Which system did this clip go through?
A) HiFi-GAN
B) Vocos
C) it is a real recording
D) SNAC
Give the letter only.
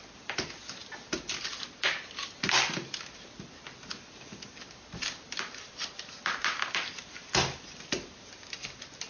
C